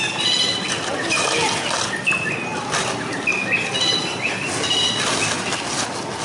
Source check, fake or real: real